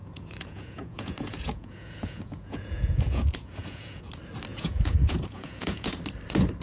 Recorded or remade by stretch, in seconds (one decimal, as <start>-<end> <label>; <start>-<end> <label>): 0.0-4.0 remade; 4.0-4.5 recorded; 4.5-6.0 remade; 6.0-6.6 recorded